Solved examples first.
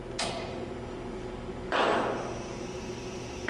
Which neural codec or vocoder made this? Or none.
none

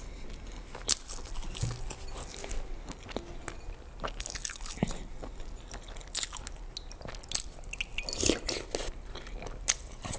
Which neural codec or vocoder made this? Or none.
none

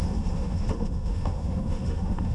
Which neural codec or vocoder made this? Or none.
autoencoder, DAC-VAE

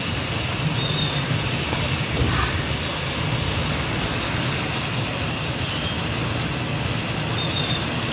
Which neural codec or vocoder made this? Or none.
none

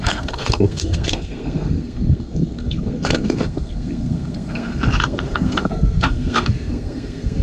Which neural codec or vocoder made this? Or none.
codec, SNAC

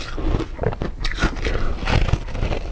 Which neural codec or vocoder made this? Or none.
none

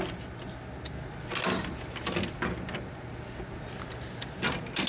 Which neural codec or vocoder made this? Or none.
none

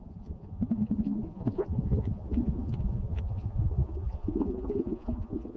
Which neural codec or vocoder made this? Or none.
vocoder, Vocos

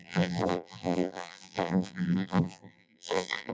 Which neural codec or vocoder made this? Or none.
vocoder, BigVGAN v2